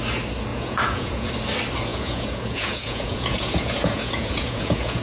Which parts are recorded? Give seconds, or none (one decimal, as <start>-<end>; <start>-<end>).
0.0-0.5; 1.3-1.9